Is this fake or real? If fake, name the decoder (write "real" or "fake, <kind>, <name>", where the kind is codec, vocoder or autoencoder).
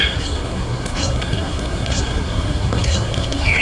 fake, codec, SNAC